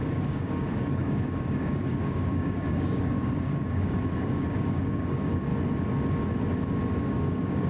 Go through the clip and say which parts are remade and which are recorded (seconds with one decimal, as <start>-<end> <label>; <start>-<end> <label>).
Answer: 0.0-5.5 remade; 5.5-7.0 recorded; 7.0-7.7 remade